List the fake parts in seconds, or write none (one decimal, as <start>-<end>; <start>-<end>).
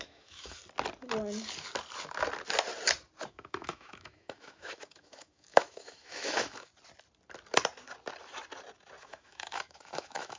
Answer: 0.0-0.6; 3.3-6.7; 9.0-10.4